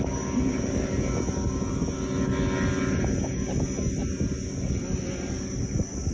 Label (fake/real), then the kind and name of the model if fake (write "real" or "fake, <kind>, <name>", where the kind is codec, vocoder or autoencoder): real